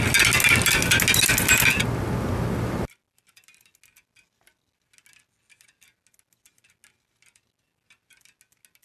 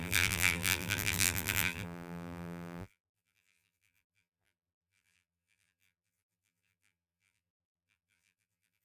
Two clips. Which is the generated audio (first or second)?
second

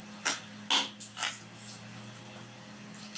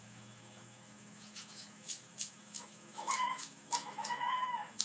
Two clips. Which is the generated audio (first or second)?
second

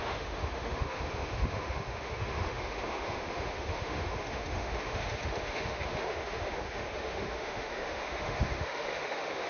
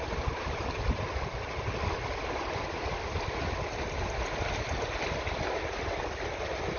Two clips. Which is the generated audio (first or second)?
first